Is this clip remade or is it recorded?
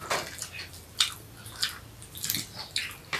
recorded